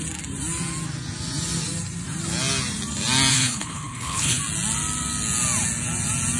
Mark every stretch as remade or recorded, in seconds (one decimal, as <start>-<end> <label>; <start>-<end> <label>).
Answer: 0.0-3.3 recorded; 3.3-4.4 remade; 4.4-6.4 recorded